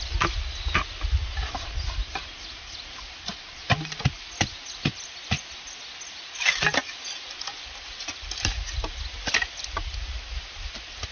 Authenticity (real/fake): real